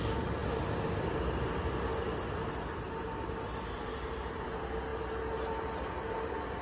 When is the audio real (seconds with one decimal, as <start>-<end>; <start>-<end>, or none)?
0.0-6.6